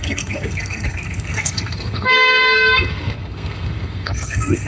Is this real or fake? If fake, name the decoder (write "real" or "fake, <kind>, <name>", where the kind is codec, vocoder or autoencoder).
fake, codec, SNAC